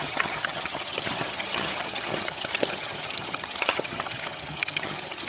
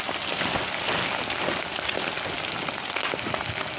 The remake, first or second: first